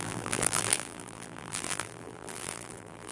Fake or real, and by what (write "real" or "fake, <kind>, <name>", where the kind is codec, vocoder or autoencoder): fake, vocoder, BigVGAN v2